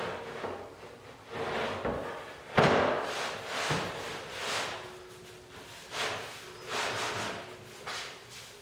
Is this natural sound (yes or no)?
yes